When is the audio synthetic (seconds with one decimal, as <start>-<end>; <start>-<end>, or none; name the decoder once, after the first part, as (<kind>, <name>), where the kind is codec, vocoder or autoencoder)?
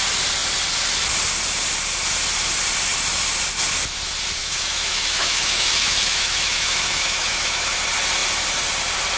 4.4-7.7 (autoencoder, DAC-VAE)